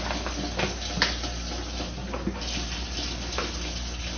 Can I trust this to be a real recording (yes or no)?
yes